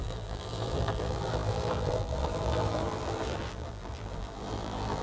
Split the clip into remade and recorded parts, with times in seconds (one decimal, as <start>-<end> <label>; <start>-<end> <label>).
0.0-5.0 remade